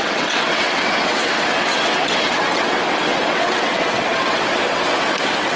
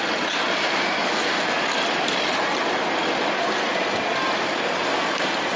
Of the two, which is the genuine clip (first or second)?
second